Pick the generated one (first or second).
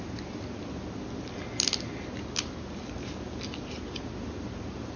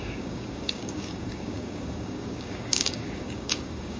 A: second